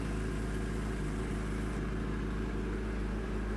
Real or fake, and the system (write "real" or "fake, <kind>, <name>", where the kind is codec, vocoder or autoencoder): real